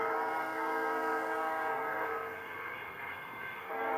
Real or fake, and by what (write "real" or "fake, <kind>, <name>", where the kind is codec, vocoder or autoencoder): fake, codec, SNAC